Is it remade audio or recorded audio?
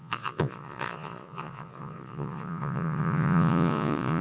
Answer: remade